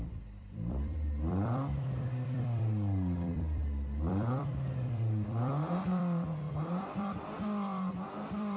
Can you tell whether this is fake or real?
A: fake